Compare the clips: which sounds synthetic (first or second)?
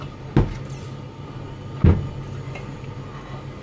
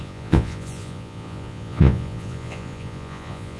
second